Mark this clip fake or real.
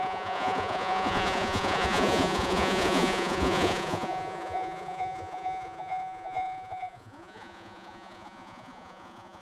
fake